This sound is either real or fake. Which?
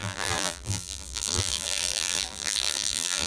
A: fake